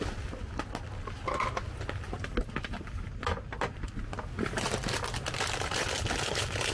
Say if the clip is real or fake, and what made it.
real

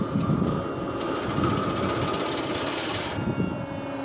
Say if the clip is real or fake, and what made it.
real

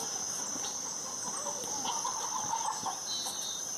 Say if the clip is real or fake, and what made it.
real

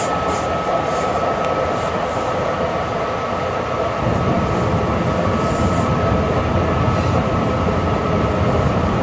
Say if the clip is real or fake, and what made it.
fake, vocoder, BigVGAN v2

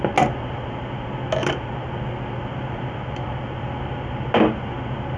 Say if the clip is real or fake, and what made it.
real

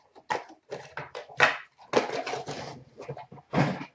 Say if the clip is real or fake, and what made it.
real